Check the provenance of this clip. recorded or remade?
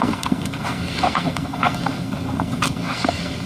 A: remade